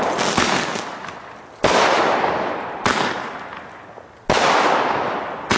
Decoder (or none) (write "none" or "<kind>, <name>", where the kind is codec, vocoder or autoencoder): none